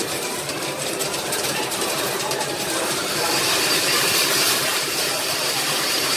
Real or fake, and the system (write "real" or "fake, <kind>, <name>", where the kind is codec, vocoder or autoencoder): fake, vocoder, BigVGAN v2